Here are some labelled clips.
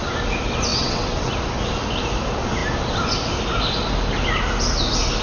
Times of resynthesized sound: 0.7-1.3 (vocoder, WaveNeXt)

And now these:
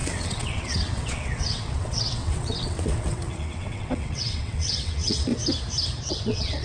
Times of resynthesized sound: 0.0-5.3 (vocoder, WaveNeXt); 6.1-6.6

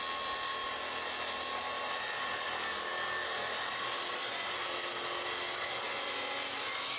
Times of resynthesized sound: none